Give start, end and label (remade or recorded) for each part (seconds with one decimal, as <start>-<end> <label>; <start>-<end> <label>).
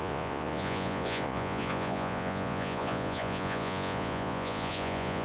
0.0-5.2 remade